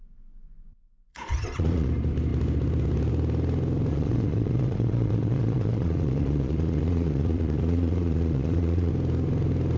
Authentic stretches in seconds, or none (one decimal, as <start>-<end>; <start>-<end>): 0.0-1.1; 1.9-3.9; 8.9-9.8